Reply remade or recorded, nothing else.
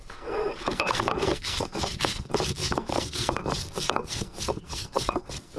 remade